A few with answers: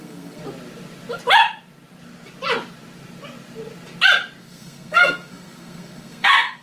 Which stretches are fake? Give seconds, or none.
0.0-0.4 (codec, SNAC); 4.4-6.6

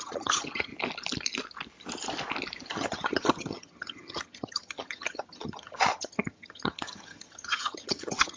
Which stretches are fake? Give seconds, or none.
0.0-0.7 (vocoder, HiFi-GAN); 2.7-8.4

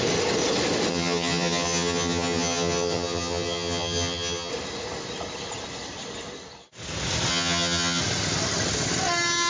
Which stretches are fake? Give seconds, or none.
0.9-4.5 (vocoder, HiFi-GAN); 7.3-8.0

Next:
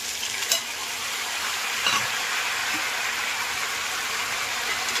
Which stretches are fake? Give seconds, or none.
none

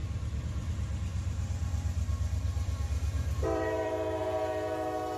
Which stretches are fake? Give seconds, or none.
0.0-0.7 (vocoder, BigVGAN v2); 1.1-4.2